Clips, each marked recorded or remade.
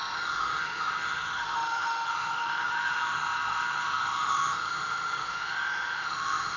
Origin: remade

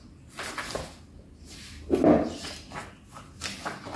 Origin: recorded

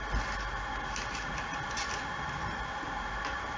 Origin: recorded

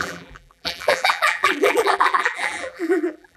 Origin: remade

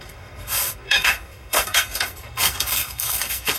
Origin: remade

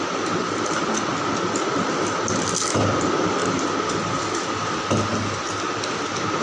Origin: recorded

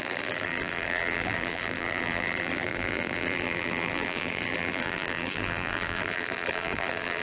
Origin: remade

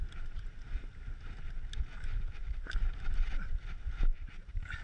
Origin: recorded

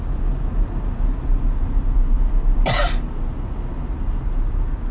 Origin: recorded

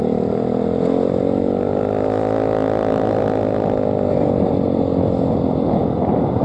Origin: recorded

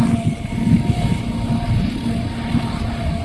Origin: recorded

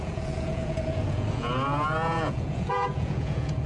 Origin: remade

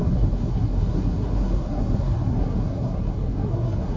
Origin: remade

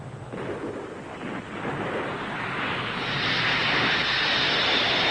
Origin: recorded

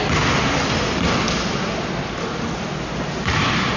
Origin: recorded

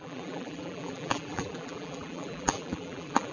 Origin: remade